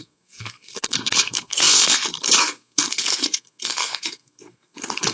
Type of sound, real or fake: fake